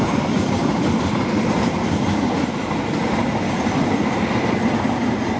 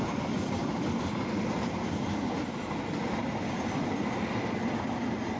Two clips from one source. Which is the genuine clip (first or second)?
second